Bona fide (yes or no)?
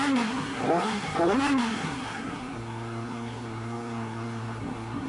no